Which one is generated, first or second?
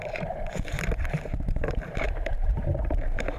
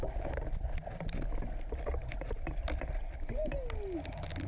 first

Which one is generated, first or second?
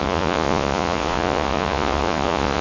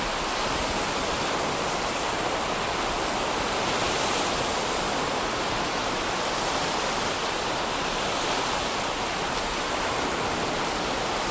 first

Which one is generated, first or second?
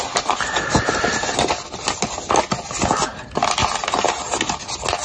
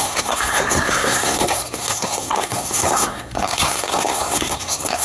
second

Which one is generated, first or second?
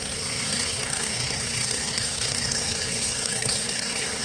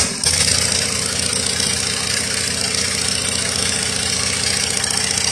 first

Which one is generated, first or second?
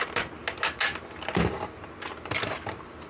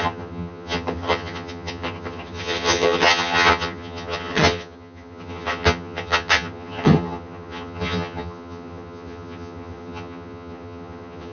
second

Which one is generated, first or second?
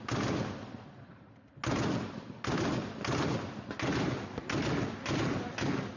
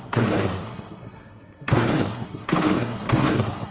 second